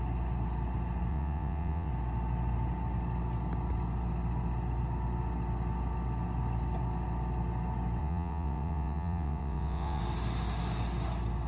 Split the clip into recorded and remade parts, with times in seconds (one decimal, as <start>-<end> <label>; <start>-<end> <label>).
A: 0.0-1.1 recorded; 1.1-1.9 remade; 1.9-8.0 recorded; 8.0-10.0 remade; 10.0-11.5 recorded